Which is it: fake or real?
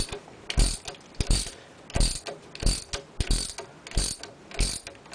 real